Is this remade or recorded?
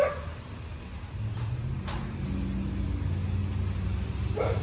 recorded